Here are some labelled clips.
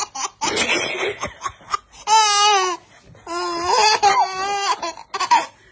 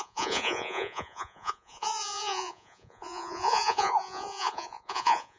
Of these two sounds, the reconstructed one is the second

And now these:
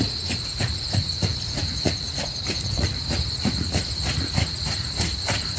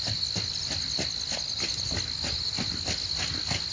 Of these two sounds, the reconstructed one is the first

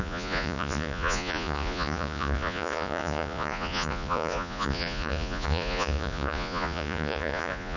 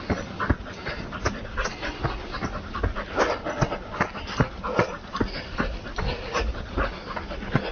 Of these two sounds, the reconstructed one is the first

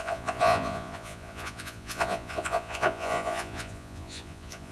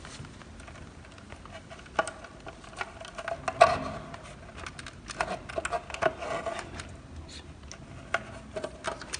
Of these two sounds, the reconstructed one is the first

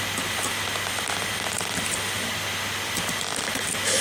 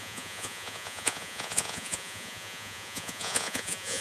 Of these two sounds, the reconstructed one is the second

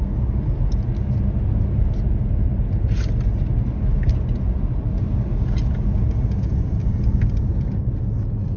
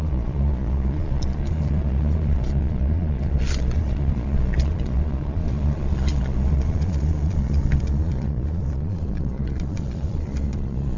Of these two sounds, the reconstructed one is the second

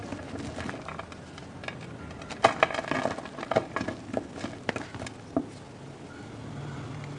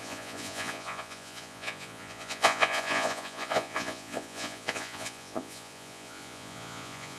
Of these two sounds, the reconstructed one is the second